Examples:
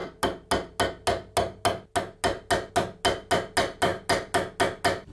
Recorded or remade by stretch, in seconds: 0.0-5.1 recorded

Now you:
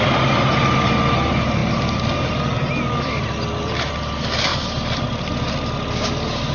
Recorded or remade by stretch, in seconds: 0.0-4.5 recorded; 4.5-5.3 remade; 5.3-6.5 recorded